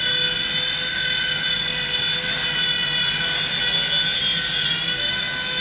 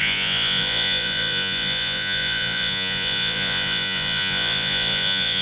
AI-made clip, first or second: second